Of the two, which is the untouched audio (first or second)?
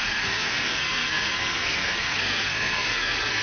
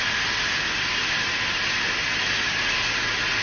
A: second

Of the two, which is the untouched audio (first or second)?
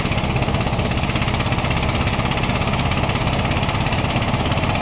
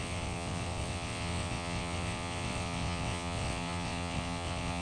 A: first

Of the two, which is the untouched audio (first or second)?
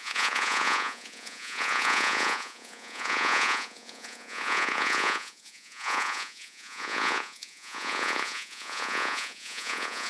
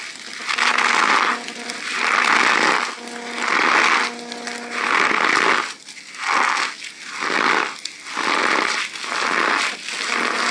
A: second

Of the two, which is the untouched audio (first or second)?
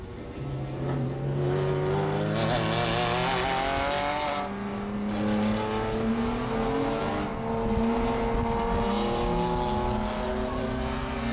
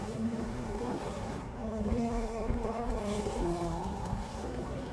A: first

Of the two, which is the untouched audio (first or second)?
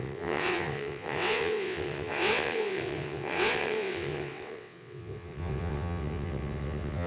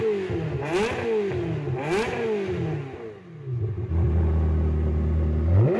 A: second